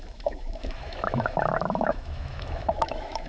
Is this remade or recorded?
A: remade